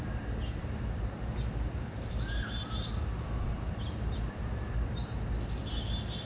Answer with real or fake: real